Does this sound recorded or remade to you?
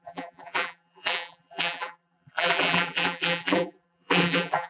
remade